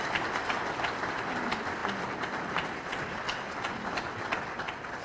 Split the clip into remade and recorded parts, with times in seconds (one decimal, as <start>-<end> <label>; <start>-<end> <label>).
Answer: 0.0-5.0 recorded